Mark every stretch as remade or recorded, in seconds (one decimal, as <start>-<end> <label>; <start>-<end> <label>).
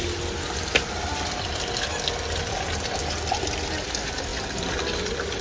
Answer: 0.0-5.4 recorded